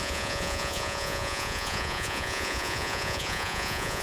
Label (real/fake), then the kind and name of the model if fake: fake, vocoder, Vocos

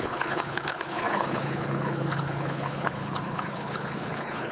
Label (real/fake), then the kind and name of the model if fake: fake, codec, HILCodec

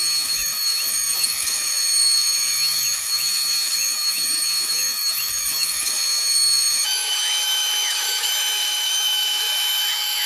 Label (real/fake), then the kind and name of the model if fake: fake, autoencoder, DAC-VAE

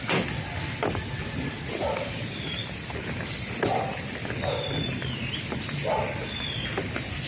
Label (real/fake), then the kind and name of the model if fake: real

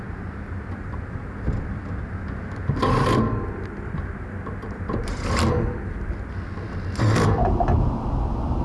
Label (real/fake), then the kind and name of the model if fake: real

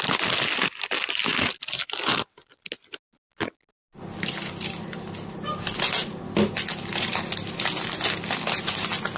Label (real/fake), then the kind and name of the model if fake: real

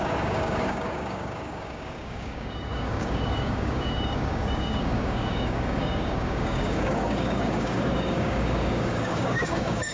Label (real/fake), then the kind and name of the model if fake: fake, codec, DAC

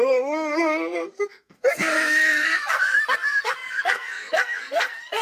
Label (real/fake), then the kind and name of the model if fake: fake, codec, SNAC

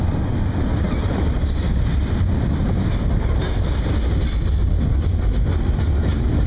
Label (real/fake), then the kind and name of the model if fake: real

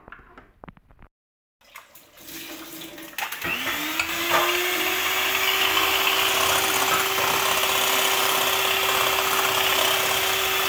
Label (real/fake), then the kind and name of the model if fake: real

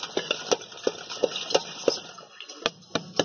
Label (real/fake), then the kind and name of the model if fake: real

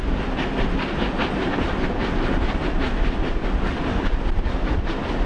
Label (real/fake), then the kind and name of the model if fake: real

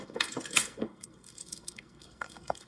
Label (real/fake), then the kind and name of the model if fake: fake, codec, SNAC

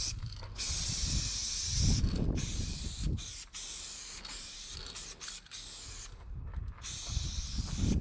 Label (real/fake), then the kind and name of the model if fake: real